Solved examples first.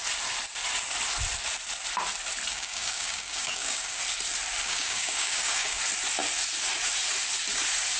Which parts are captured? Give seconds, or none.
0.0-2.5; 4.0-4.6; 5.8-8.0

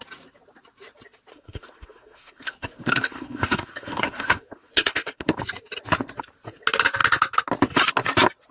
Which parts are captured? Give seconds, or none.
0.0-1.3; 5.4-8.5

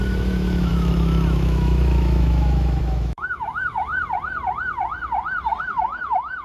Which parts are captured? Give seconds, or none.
3.9-5.6

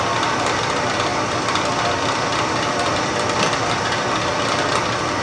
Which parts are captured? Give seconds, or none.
0.0-5.2